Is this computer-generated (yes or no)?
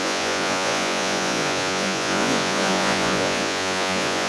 yes